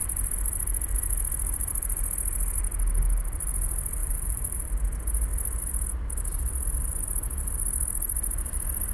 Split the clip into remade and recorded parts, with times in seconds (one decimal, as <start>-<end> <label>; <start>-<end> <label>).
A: 0.0-4.0 recorded; 4.0-4.7 remade; 4.7-8.9 recorded